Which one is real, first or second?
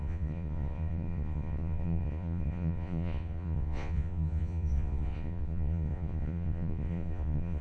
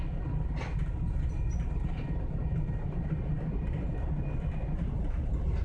second